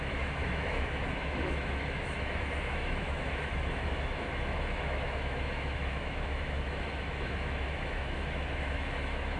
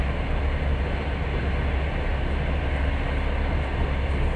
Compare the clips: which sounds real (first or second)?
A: second